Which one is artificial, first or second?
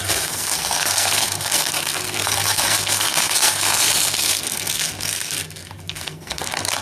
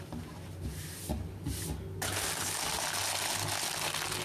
first